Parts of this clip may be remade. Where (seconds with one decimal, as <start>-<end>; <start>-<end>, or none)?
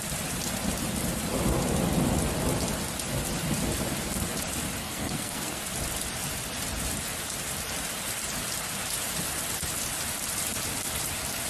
4.8-5.6